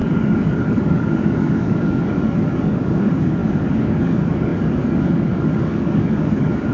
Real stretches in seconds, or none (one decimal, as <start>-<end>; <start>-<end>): none